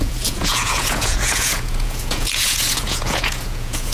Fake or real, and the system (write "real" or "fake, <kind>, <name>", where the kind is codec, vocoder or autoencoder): fake, vocoder, Vocos